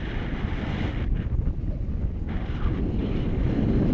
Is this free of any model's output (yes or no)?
no